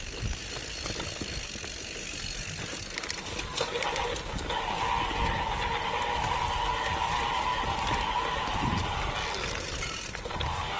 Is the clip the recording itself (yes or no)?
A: yes